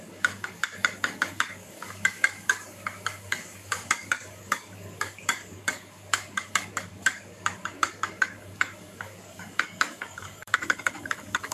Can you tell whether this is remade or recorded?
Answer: remade